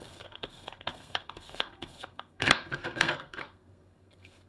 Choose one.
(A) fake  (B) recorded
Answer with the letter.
A